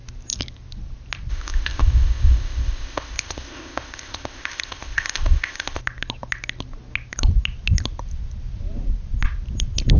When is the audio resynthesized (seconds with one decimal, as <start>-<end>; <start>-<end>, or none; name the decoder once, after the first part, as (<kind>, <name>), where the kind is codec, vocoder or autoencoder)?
1.3-5.8 (codec, ZipCodec)